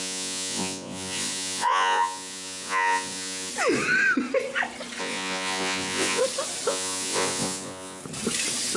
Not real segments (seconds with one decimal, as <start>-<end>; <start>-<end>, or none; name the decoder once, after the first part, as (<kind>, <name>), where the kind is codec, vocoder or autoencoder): 0.0-3.5 (vocoder, Vocos); 5.0-6.2; 6.7-8.0